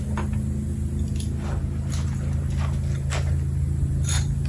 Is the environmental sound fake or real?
real